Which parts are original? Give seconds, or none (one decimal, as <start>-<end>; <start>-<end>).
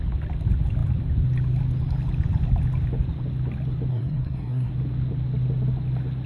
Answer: 0.0-3.9; 4.7-6.3